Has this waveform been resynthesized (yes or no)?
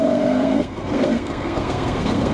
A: yes